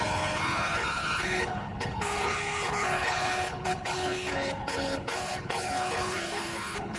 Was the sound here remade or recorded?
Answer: remade